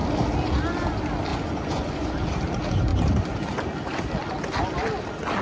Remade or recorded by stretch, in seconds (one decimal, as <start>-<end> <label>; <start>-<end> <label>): 0.0-1.3 recorded; 1.3-2.1 remade; 2.1-5.4 recorded

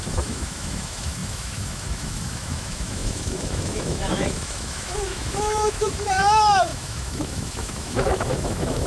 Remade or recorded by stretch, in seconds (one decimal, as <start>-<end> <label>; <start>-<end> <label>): 0.0-8.9 remade

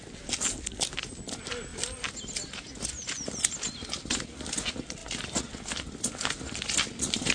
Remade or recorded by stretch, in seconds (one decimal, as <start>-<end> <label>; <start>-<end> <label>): 0.0-7.3 recorded

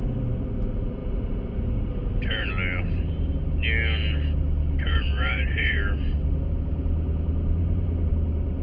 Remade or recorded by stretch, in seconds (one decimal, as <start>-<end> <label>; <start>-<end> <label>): 0.0-1.0 recorded; 1.0-2.5 remade; 2.5-4.6 recorded; 4.6-5.8 remade; 5.8-7.6 recorded; 7.6-8.1 remade; 8.1-8.6 recorded